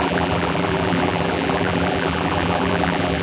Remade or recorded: remade